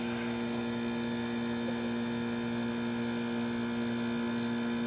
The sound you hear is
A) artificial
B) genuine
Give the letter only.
B